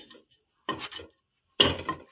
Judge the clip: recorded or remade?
recorded